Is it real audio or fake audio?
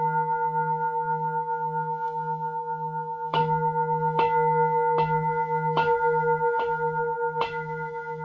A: fake